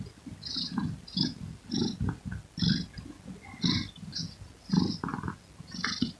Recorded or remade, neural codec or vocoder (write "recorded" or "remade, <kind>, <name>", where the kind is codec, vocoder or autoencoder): recorded